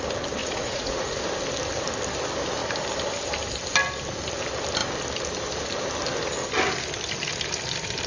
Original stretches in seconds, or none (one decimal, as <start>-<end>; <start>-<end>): 0.0-0.4; 1.2-8.1

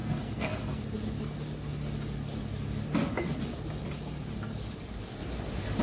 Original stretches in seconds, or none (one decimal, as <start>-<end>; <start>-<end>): 0.8-5.8

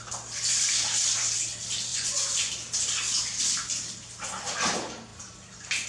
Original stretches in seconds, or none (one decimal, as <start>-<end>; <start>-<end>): 0.0-1.9; 2.5-5.9

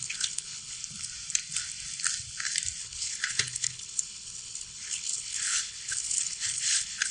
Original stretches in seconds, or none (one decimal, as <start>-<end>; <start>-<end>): 0.8-2.8

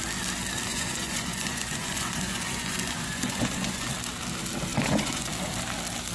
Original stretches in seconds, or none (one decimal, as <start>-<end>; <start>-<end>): 0.0-0.7; 3.9-4.7; 5.3-6.1

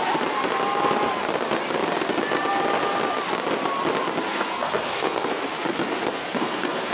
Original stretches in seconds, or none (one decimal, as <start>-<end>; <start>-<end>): 0.0-4.3; 5.3-6.1

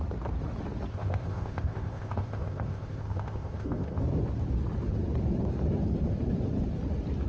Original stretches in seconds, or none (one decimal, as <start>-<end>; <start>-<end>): 0.0-0.9; 4.0-7.3